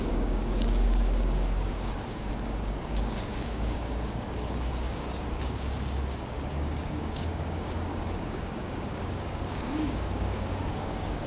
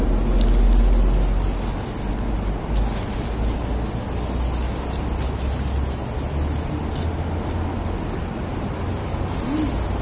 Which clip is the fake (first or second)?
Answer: first